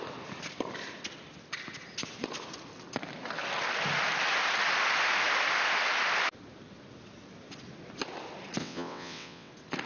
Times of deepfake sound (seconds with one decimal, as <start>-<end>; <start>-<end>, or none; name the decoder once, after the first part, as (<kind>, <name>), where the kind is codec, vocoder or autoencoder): 8.6-9.5 (vocoder, WaveNeXt)